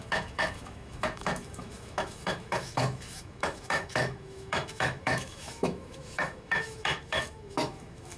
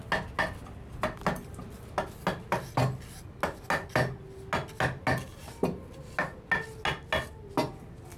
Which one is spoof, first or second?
first